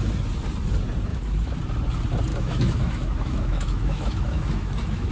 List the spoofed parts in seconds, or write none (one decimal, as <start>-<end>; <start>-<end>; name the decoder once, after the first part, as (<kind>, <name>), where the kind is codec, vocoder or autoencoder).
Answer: 1.1-1.6 (autoencoder, DAC-VAE); 2.3-5.1